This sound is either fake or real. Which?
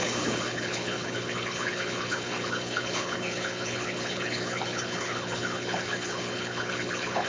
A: fake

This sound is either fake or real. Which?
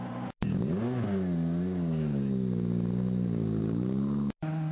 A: real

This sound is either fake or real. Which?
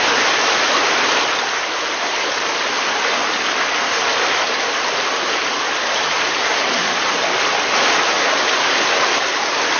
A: real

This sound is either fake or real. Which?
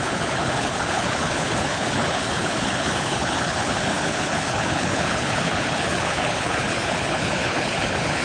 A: fake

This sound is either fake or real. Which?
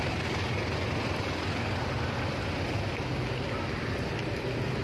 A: real